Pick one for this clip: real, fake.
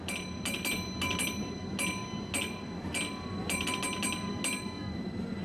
real